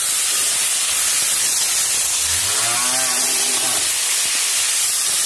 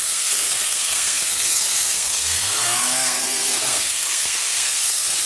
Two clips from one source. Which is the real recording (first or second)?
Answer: first